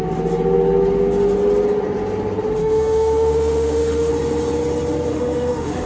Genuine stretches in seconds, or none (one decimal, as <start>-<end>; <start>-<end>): 0.0-2.6; 4.1-5.1